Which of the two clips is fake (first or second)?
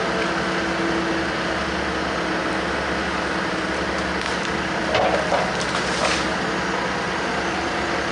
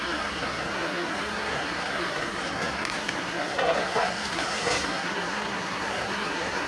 second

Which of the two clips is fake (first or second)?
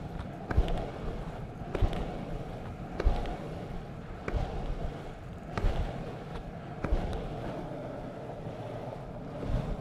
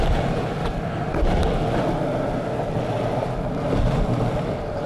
first